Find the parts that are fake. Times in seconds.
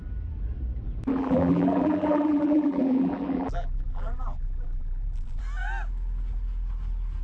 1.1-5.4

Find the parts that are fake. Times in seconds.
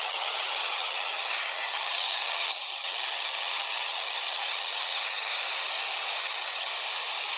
0.0-5.3; 6.2-6.7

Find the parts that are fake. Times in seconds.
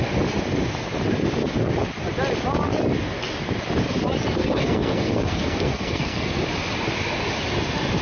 4.4-6.4